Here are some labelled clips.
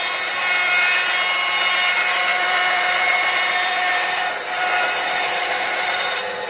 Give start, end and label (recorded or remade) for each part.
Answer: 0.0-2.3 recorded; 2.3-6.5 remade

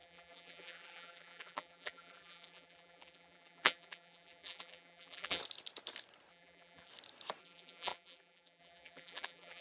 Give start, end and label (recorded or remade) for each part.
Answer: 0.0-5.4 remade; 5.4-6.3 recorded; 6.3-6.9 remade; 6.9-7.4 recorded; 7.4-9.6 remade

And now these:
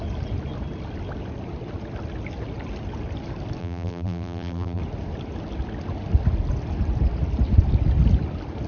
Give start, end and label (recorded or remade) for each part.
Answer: 0.0-3.6 recorded; 3.6-4.8 remade; 4.8-8.7 recorded

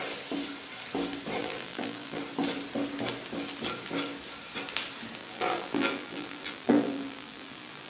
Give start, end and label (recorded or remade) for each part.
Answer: 0.0-1.4 recorded; 1.4-2.2 remade; 2.2-5.2 recorded; 5.2-7.9 remade

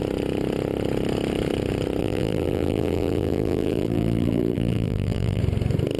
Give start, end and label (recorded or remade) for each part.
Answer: 0.0-2.0 recorded; 2.0-5.4 remade; 5.4-6.0 recorded

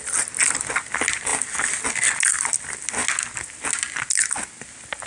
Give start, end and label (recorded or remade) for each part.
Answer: 0.0-5.1 recorded